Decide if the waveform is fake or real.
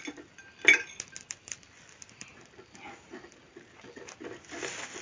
real